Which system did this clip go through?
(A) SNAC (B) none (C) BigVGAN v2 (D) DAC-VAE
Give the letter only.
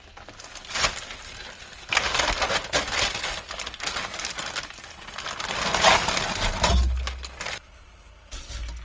B